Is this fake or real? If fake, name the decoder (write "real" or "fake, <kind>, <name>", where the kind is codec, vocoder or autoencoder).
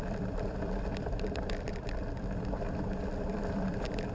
fake, vocoder, BigVGAN v2